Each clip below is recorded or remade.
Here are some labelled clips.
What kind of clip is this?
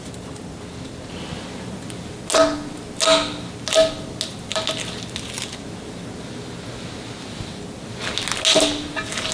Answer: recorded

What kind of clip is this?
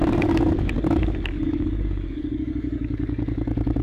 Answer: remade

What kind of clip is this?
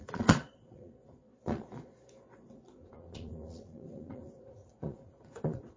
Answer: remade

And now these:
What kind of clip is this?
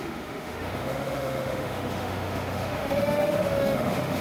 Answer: remade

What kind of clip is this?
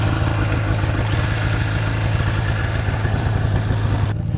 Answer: recorded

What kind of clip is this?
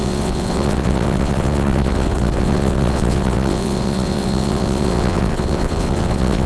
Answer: remade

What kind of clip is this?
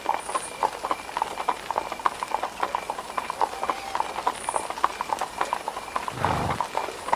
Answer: recorded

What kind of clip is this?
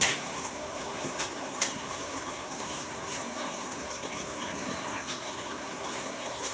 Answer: remade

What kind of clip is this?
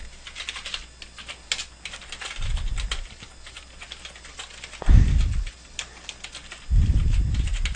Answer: recorded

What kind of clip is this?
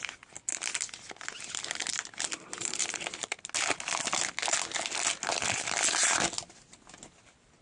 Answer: recorded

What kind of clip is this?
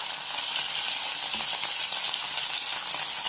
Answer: recorded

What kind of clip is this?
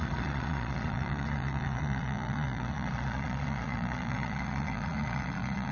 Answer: remade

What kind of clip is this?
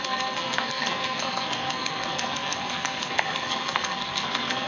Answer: remade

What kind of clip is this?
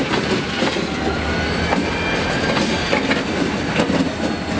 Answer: recorded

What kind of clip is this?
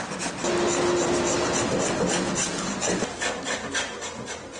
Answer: recorded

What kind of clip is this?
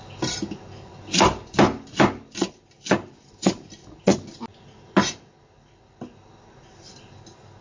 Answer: recorded